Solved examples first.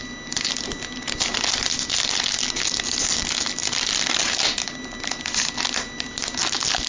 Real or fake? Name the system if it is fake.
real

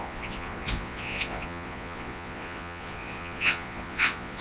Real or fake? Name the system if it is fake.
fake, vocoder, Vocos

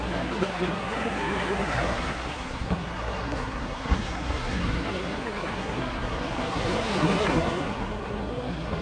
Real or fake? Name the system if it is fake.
fake, codec, SNAC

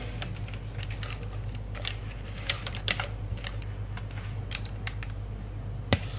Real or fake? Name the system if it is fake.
real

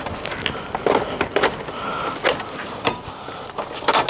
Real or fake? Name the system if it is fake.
real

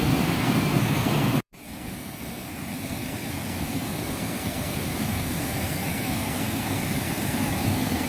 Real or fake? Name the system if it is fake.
fake, codec, SNAC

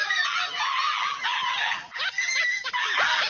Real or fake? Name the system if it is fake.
fake, vocoder, BigVGAN v2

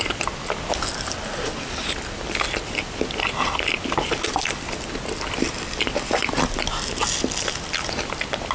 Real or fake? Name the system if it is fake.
real